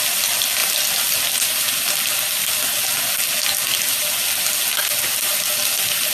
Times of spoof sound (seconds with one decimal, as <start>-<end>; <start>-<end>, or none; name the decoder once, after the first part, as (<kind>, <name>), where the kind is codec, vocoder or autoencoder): none

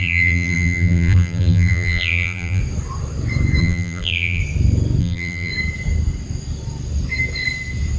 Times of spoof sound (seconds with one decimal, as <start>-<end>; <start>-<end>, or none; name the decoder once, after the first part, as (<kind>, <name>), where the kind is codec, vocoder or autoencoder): 0.0-2.6 (vocoder, BigVGAN v2); 3.6-4.4; 5.0-5.5

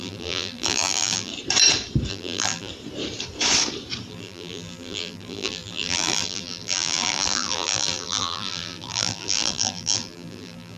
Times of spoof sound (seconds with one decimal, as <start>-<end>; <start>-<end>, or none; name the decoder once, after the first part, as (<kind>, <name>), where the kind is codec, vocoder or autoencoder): 0.0-1.3 (vocoder, BigVGAN v2); 2.1-2.7; 4.1-10.8

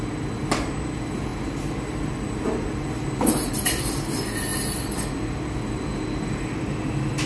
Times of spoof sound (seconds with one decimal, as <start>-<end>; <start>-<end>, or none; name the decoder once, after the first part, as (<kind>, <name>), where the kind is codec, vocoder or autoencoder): 1.3-3.5 (vocoder, BigVGAN v2)

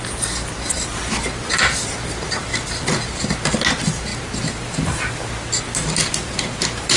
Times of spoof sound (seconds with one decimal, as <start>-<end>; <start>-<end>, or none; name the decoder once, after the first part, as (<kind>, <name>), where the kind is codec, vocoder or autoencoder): 4.1-5.3 (vocoder, BigVGAN v2); 6.0-7.0

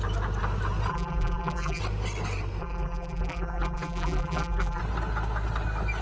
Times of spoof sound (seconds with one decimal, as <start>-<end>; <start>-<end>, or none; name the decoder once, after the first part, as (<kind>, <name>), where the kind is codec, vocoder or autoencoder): 0.9-1.8 (vocoder, BigVGAN v2); 2.6-4.8

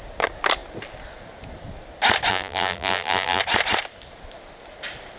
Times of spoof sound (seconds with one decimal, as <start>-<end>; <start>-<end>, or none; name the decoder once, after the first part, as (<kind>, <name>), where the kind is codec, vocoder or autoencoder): 2.3-3.4 (vocoder, BigVGAN v2)